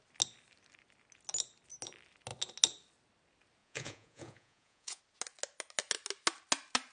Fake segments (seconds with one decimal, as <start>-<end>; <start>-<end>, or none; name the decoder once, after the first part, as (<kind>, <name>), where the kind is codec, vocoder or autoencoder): 3.6-5.0 (vocoder, Vocos)

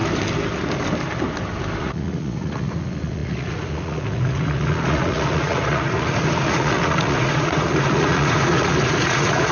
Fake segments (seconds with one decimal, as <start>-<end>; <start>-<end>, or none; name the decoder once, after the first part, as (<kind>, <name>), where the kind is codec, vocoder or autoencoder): 1.8-9.5 (vocoder, Vocos)

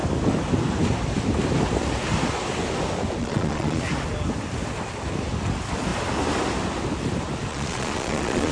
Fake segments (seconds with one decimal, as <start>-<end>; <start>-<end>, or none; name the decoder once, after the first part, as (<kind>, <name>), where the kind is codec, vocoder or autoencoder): 3.2-3.8 (vocoder, Vocos); 7.5-8.5

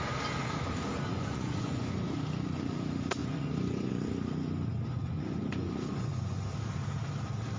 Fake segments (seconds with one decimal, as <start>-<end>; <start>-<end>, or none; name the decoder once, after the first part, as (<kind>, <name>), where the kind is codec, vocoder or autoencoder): 1.1-1.9 (vocoder, Vocos); 3.2-3.9; 4.9-6.4

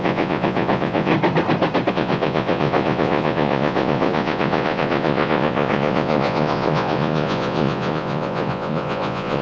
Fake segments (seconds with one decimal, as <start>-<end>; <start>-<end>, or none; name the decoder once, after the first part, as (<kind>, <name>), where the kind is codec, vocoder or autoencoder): 0.0-1.1 (vocoder, Vocos); 1.9-9.4

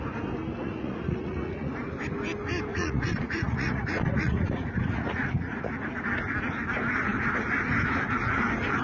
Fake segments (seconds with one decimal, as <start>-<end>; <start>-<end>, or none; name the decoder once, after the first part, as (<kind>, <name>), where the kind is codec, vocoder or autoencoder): 0.6-1.7 (vocoder, Vocos); 2.7-5.7